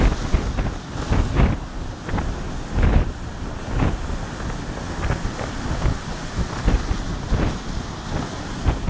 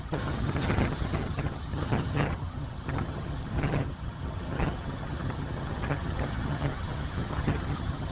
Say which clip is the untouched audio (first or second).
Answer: first